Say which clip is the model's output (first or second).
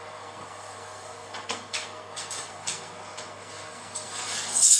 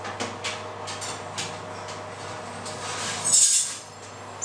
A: first